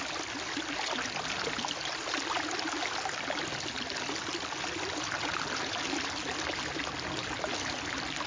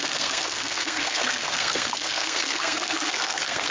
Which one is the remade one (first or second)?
second